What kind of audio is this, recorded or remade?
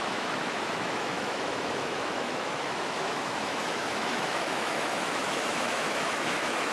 remade